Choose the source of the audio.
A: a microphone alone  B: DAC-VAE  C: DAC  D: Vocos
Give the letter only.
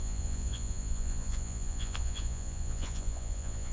D